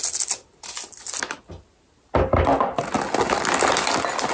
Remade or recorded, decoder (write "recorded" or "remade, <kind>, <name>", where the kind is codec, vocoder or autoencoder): recorded